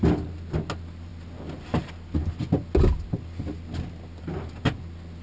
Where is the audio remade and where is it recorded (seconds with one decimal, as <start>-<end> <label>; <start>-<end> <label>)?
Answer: 0.0-5.2 recorded